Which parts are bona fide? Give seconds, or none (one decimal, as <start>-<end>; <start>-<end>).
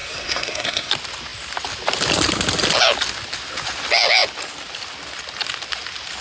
0.9-6.2